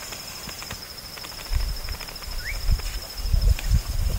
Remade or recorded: recorded